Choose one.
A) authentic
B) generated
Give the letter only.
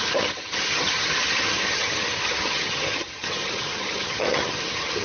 B